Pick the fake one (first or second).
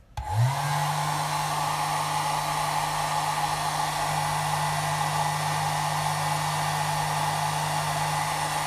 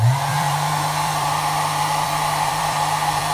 second